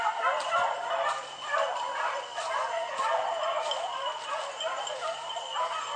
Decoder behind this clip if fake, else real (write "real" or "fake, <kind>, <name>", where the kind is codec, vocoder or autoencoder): real